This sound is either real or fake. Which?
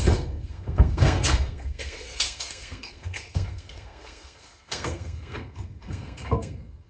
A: fake